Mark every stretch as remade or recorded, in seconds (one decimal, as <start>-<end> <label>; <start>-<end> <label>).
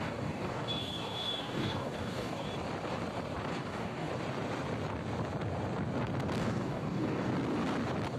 0.0-2.5 remade; 2.5-3.5 recorded; 3.5-4.1 remade; 4.1-6.4 recorded; 6.4-7.3 remade; 7.3-8.2 recorded